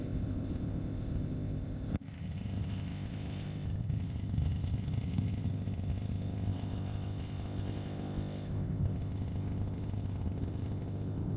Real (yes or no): no